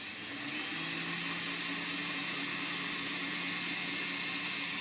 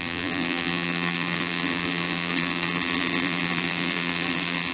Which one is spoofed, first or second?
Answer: second